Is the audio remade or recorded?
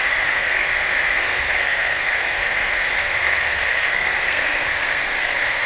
remade